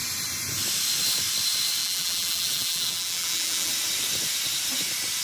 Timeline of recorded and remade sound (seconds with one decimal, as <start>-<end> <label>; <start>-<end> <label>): 0.0-1.8 recorded; 1.8-3.7 remade; 3.7-5.2 recorded